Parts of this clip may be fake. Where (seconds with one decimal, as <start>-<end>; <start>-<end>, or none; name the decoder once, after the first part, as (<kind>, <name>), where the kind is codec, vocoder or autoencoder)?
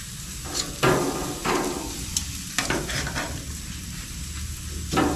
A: 1.4-4.1 (vocoder, BigVGAN v2)